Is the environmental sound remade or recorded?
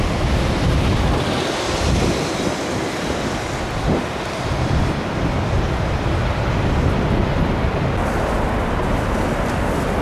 recorded